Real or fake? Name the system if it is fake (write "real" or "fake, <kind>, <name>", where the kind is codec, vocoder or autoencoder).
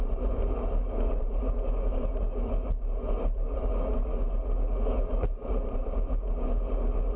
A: real